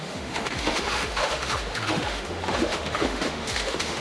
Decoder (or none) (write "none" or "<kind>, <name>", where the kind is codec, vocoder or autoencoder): autoencoder, DAC-VAE